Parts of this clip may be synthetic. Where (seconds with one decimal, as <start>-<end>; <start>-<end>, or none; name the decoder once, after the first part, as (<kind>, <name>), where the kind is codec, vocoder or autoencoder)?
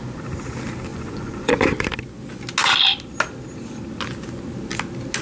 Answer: 0.9-1.5 (vocoder, Vocos)